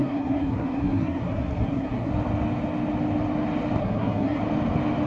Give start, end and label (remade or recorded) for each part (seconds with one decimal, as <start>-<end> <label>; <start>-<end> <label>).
0.0-2.1 remade; 2.1-3.8 recorded; 3.8-4.4 remade; 4.4-5.1 recorded